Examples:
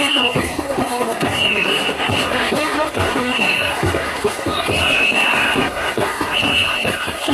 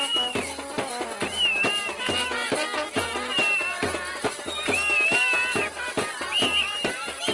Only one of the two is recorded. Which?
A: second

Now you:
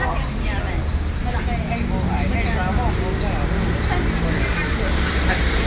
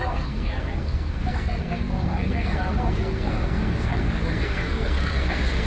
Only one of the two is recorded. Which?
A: first